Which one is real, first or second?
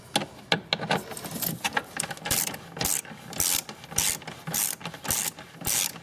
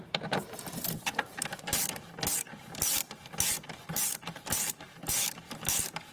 first